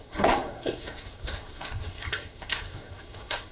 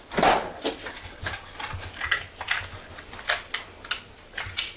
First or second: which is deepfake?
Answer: first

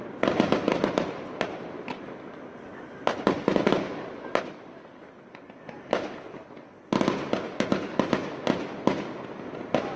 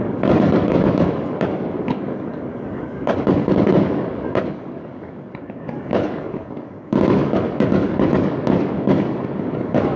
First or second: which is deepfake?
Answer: second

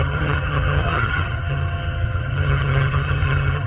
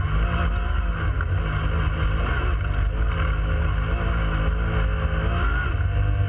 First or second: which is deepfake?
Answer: first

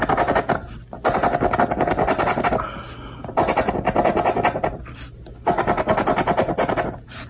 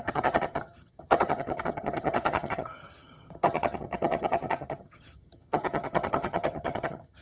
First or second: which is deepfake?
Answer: second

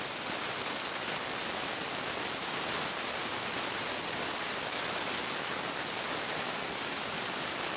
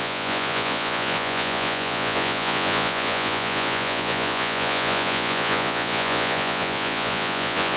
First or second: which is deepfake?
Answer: second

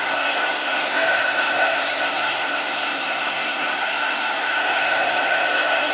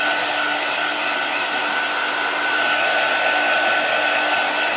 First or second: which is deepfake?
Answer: first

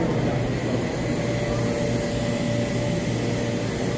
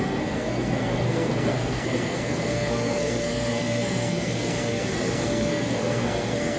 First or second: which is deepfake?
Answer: second